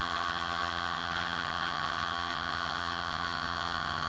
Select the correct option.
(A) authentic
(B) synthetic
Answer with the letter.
B